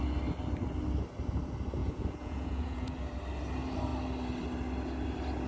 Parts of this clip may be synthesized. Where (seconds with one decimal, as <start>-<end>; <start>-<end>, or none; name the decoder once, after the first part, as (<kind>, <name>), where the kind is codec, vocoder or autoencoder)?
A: 1.8-2.9 (vocoder, Vocos)